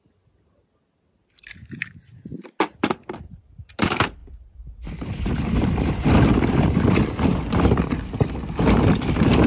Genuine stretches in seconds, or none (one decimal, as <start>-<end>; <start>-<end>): 0.0-9.5